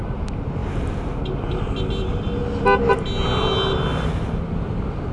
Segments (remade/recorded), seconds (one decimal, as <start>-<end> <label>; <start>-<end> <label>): 0.0-5.1 recorded